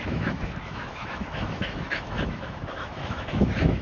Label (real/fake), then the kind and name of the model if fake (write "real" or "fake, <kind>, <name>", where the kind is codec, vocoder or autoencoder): fake, autoencoder, DAC-VAE